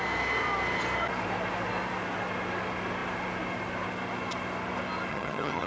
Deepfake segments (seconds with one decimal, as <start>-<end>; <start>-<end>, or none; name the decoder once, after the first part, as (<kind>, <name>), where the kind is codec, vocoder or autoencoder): 5.1-5.7 (vocoder, HiFi-GAN)